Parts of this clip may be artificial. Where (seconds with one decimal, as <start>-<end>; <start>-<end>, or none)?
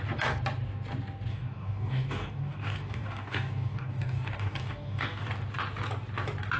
1.3-5.3